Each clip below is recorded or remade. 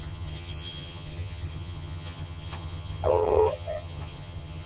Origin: remade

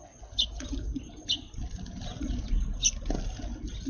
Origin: recorded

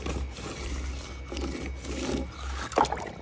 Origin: recorded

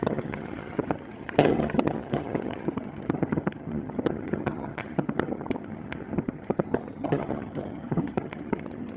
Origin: remade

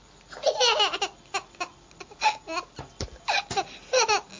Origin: recorded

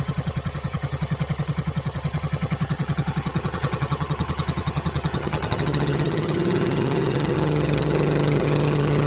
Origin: remade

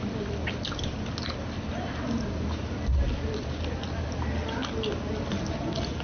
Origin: recorded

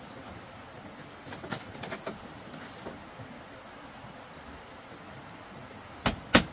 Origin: recorded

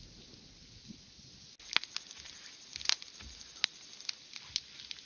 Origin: recorded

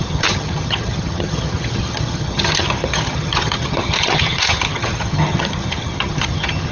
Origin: remade